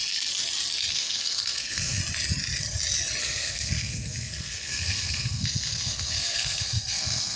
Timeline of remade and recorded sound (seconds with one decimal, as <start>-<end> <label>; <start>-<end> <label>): 0.0-0.9 recorded; 0.9-2.0 remade; 2.0-3.2 recorded; 3.2-7.4 remade